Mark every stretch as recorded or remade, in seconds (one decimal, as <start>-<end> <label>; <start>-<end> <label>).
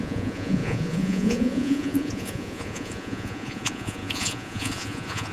0.0-5.3 remade